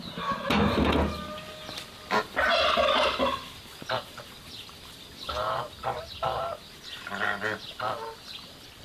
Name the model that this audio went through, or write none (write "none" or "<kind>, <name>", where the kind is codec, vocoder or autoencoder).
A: none